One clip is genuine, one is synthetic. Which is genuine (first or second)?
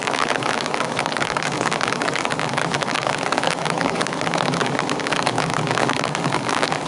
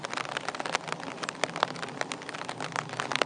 second